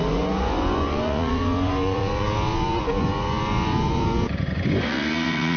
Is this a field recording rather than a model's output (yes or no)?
no